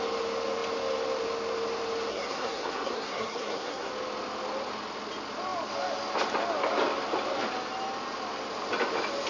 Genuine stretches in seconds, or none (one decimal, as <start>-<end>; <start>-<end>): 0.0-2.1; 3.9-9.3